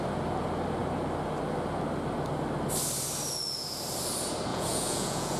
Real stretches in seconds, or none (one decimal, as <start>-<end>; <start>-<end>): 0.0-4.5